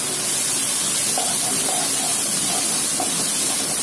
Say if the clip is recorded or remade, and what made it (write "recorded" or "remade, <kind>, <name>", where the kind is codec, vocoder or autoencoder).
recorded